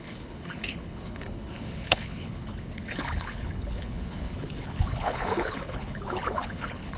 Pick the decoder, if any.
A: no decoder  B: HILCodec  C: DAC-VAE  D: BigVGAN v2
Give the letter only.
B